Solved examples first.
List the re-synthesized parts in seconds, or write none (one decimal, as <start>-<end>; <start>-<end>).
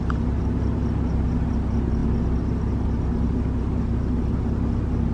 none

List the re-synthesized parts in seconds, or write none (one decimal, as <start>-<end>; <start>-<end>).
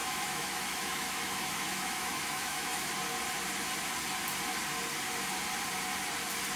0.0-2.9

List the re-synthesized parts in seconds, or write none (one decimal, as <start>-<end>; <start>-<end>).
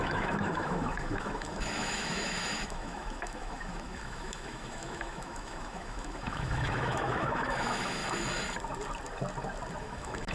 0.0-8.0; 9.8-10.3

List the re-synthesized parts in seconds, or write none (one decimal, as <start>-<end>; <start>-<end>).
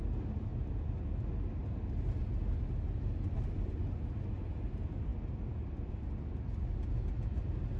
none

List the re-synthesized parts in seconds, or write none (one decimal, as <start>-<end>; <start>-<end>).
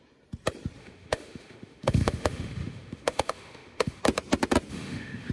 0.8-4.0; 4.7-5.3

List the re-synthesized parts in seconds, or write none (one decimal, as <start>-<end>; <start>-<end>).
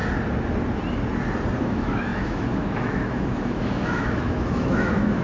1.6-5.2